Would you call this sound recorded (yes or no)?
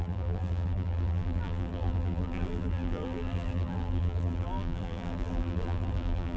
no